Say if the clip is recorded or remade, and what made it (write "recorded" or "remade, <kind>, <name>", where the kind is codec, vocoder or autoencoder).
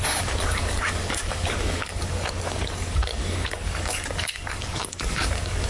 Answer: remade, codec, DAC